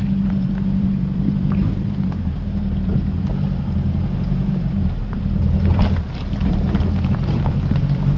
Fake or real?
fake